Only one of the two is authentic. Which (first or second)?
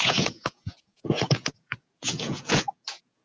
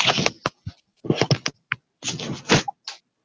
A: second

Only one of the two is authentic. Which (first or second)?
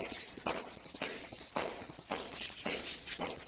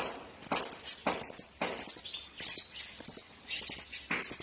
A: second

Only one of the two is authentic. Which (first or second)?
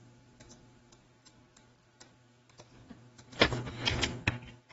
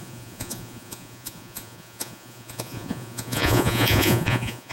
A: first